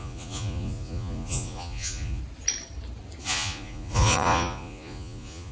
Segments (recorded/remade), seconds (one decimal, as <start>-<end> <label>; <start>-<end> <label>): 0.0-2.2 remade; 2.2-3.2 recorded; 3.2-5.5 remade